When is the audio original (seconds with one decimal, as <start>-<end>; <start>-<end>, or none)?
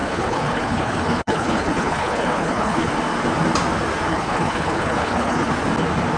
2.9-4.1; 5.5-6.2